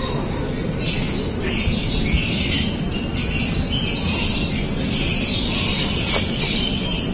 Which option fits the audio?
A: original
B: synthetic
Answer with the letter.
A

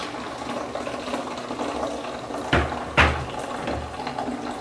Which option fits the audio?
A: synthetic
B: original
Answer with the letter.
B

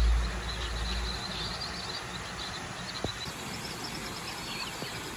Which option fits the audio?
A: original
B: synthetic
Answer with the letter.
A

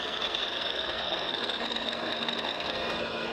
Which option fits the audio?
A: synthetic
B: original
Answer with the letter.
A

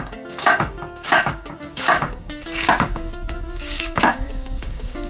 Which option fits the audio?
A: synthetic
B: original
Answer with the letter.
A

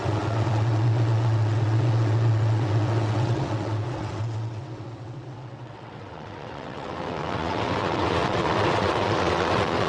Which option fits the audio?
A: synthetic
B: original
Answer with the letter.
A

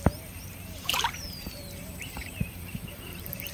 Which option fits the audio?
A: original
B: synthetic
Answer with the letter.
B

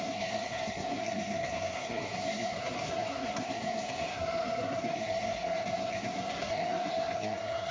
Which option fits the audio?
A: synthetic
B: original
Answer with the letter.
A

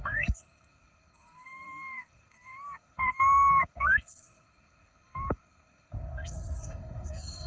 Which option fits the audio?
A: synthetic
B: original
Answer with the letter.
A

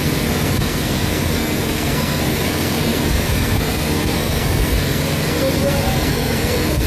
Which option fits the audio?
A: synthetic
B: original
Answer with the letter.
A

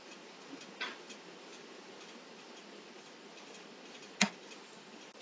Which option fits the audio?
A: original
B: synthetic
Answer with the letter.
A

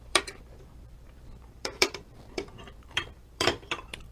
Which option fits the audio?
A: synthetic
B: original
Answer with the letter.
A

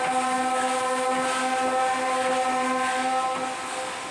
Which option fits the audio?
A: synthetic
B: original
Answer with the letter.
B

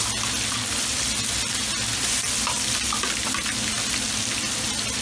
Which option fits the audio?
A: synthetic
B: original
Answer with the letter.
B